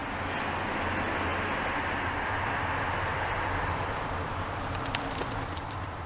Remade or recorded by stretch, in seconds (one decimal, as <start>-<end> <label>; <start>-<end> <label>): 0.0-6.1 recorded